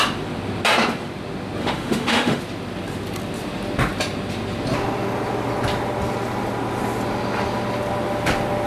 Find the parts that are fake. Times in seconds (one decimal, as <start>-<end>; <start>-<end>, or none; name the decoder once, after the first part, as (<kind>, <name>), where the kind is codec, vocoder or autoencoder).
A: 1.6-2.4 (autoencoder, DAC-VAE)